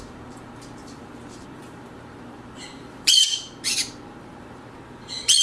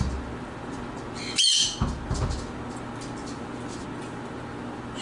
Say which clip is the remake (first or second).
first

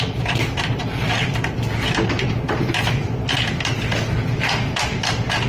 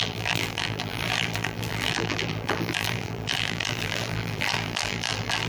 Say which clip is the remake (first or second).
second